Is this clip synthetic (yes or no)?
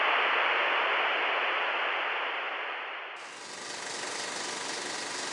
no